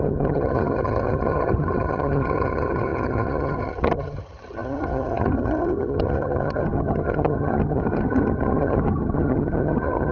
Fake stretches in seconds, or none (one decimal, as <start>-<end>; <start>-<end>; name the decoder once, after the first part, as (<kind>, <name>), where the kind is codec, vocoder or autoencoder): 0.0-10.1 (vocoder, HiFi-GAN)